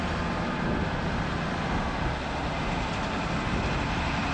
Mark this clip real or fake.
real